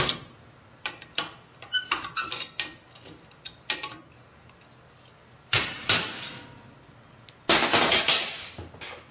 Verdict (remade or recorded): recorded